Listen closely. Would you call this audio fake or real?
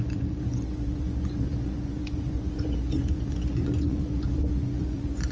fake